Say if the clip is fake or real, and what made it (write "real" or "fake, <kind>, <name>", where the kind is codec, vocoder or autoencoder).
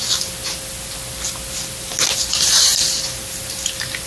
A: real